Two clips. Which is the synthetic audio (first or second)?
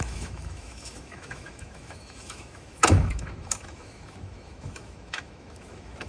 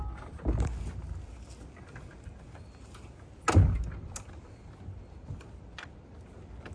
first